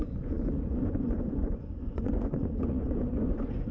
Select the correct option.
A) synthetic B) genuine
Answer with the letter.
A